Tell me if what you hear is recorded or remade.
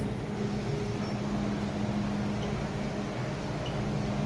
recorded